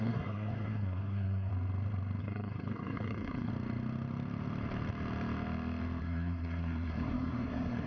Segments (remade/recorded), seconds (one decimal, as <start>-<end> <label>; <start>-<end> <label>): 0.0-1.5 remade; 1.5-2.2 recorded; 2.2-3.5 remade; 3.5-6.0 recorded; 6.0-7.9 remade